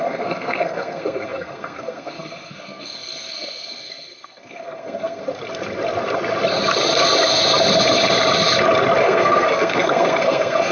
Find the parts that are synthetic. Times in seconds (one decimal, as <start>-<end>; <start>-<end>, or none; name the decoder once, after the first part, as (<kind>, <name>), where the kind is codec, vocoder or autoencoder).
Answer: 0.0-5.2 (codec, SNAC); 9.0-10.7